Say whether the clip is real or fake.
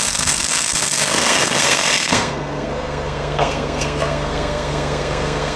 fake